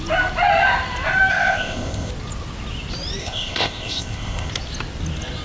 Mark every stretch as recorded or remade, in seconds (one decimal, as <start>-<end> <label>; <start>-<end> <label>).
0.0-1.3 recorded; 1.3-2.1 remade; 2.1-3.2 recorded; 3.2-4.5 remade; 4.5-5.4 recorded